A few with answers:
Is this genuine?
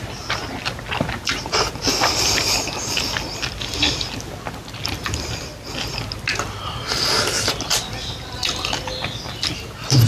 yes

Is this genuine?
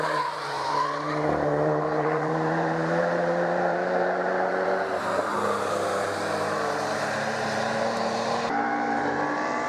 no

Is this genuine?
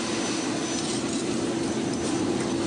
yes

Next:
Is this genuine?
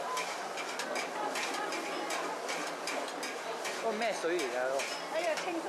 yes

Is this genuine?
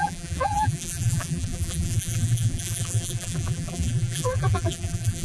no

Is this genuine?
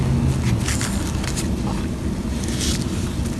yes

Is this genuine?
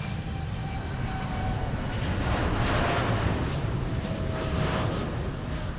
yes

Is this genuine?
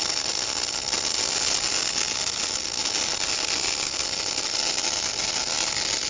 yes